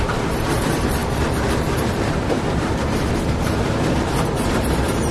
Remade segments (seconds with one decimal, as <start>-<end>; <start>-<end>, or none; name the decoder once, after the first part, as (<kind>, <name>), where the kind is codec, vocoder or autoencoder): 0.0-5.1 (vocoder, BigVGAN v2)